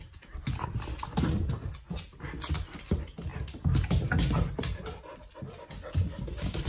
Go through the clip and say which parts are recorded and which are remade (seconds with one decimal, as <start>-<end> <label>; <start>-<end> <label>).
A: 0.0-6.7 recorded